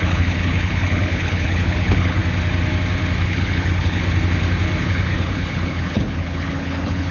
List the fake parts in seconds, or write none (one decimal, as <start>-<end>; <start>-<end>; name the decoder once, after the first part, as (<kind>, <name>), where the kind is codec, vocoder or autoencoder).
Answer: 0.0-2.2 (codec, HILCodec); 3.2-4.0; 4.8-7.1